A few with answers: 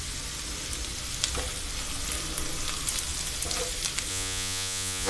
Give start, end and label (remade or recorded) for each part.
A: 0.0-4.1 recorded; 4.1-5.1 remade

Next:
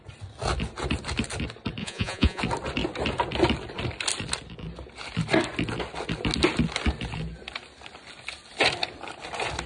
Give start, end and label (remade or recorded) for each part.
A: 0.0-1.8 recorded; 1.8-2.4 remade; 2.4-9.7 recorded

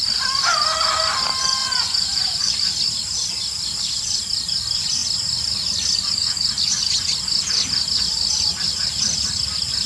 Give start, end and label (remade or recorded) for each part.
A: 0.0-1.6 recorded; 1.6-2.5 remade; 2.5-9.9 recorded

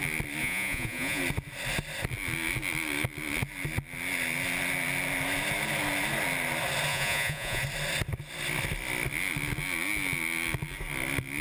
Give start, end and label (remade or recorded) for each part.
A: 0.0-0.4 recorded; 0.4-1.2 remade; 1.2-6.9 recorded; 6.9-7.6 remade; 7.6-11.4 recorded